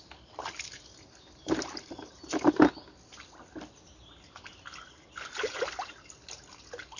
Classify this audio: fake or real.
real